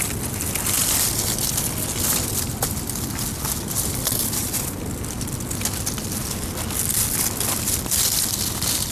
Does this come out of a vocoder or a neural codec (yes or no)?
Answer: no